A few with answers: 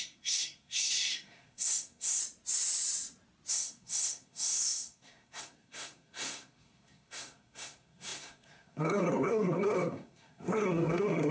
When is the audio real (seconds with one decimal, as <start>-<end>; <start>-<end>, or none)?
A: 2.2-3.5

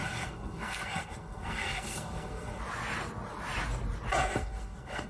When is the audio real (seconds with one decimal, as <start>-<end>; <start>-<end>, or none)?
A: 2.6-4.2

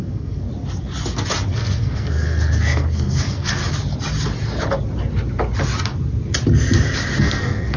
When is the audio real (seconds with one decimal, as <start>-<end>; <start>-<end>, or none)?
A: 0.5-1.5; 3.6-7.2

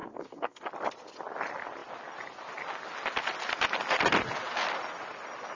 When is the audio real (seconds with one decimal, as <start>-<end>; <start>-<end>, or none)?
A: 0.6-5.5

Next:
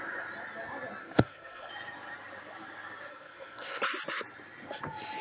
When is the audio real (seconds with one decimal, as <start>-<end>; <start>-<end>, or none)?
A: 0.0-1.0; 1.7-3.1; 3.8-5.2

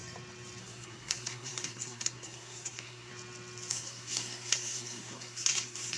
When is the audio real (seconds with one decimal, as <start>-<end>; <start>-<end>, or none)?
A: 0.0-0.6; 3.1-3.7

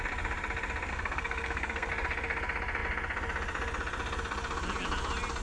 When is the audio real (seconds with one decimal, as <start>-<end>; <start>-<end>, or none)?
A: 0.0-0.9; 1.9-5.4